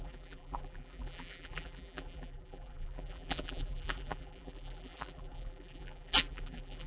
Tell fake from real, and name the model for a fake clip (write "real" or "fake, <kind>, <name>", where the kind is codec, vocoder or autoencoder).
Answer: fake, vocoder, BigVGAN v2